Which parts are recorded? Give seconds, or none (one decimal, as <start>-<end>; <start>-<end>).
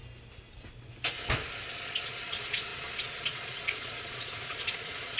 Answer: 0.0-1.7